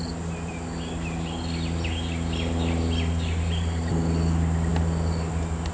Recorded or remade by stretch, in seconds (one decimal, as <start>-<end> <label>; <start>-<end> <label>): 0.0-5.7 recorded